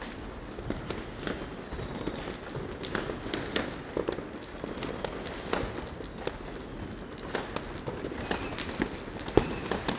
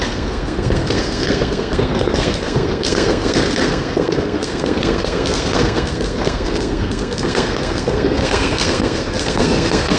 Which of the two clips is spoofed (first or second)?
second